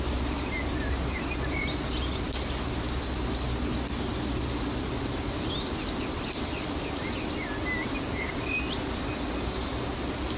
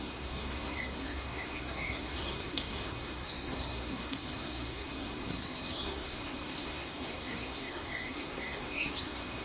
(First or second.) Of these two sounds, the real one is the first